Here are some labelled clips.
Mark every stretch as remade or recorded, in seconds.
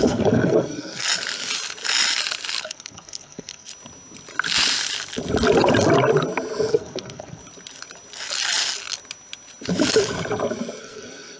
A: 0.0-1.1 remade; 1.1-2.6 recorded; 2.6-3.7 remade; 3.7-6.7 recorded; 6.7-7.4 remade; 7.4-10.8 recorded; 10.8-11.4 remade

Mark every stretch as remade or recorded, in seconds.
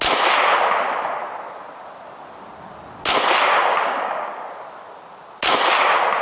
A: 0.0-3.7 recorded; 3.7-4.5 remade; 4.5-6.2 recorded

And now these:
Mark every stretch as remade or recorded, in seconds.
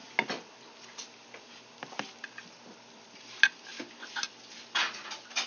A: 0.0-5.5 recorded